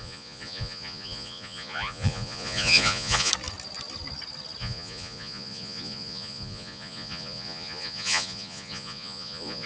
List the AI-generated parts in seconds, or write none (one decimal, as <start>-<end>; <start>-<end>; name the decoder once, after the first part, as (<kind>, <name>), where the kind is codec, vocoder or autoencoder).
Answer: 0.0-3.3 (vocoder, Vocos); 4.6-9.7